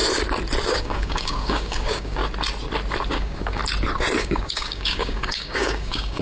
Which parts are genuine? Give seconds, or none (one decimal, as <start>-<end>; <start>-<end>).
0.0-0.7; 2.2-3.1; 3.6-4.2